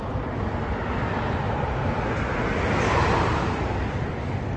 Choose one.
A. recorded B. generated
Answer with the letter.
A